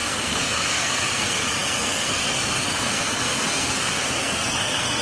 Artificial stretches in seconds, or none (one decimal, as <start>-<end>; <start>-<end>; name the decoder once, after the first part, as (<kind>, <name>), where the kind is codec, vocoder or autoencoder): 0.0-5.0 (codec, SNAC)